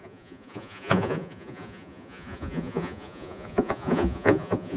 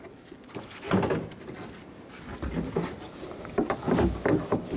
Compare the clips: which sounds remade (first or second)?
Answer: first